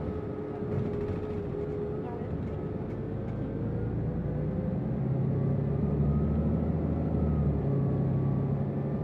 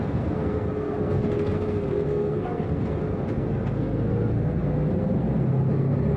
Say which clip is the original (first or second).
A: first